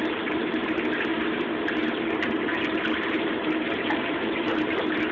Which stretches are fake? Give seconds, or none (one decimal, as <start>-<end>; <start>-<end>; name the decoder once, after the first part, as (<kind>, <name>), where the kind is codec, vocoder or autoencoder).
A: none